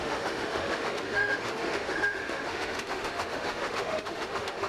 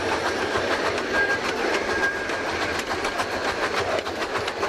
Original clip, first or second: second